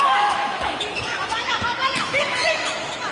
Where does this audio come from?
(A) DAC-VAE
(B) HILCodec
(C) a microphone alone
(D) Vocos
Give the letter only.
A